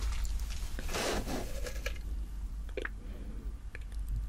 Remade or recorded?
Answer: recorded